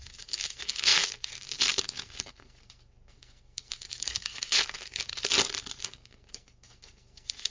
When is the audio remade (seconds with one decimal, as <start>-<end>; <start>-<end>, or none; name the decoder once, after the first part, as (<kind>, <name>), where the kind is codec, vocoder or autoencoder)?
0.0-5.1 (codec, SNAC); 5.8-7.5